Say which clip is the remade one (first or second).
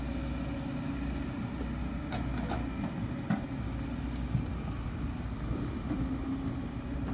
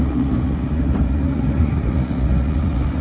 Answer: second